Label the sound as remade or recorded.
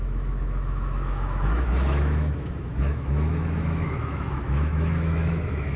remade